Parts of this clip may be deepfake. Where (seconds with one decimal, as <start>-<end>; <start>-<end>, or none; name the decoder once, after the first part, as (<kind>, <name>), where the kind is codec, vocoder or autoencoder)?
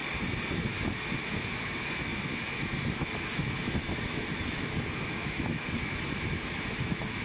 0.5-7.2 (autoencoder, DAC-VAE)